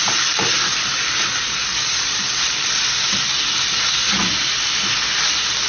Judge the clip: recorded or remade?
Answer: recorded